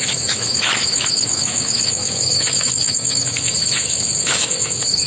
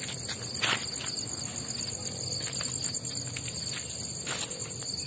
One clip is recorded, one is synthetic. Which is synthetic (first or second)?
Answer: first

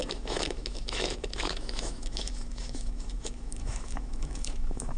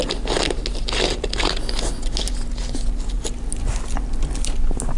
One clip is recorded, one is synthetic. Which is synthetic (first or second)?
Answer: first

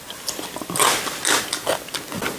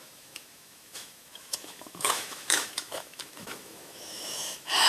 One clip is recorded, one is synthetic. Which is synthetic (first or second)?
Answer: second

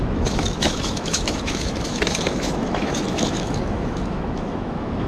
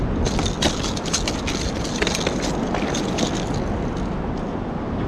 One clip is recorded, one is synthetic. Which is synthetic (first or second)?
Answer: first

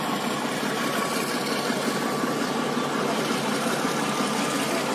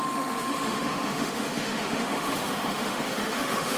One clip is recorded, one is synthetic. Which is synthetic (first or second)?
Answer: second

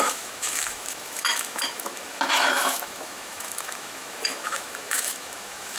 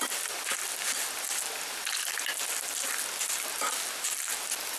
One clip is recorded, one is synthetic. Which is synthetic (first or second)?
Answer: first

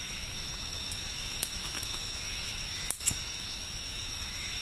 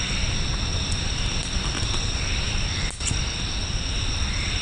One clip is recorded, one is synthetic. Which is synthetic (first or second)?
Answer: first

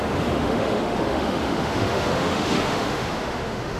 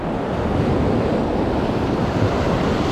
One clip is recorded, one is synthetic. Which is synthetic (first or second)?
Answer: first